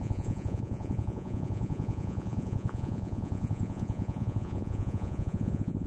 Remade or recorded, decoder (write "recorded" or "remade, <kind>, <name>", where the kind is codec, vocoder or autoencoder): remade, vocoder, Vocos